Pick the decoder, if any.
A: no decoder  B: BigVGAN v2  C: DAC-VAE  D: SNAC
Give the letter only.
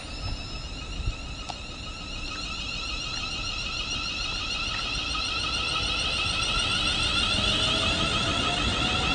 A